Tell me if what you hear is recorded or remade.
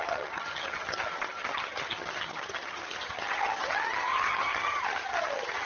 remade